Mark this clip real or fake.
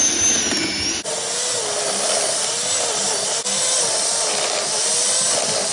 real